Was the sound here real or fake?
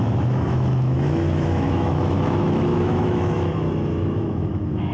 fake